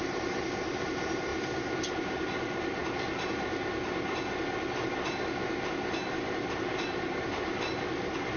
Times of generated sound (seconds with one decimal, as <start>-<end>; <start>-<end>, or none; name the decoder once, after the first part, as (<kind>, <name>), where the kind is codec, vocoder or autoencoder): 0.0-1.3 (vocoder, BigVGAN v2); 1.9-2.8; 6.1-7.4